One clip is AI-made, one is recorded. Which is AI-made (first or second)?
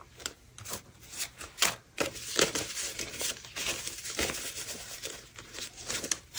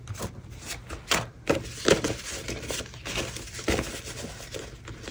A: first